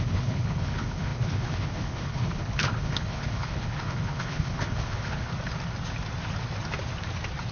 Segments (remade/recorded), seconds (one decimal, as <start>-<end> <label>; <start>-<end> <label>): 0.0-5.3 remade; 5.3-7.5 recorded